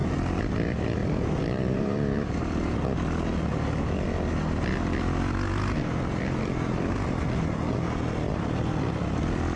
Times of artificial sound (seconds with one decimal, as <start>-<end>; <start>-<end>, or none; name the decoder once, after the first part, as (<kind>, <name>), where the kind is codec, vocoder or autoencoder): 1.0-2.5 (vocoder, BigVGAN v2)